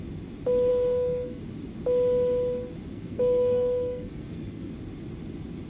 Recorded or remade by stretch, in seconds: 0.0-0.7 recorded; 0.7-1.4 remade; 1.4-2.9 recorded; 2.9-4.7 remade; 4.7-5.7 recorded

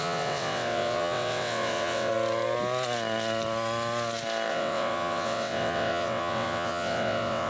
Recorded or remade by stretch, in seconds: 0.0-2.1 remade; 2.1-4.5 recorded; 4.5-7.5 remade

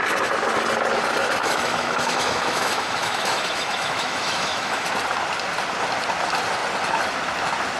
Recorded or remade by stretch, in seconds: 0.0-1.4 recorded; 1.4-4.9 remade; 4.9-7.8 recorded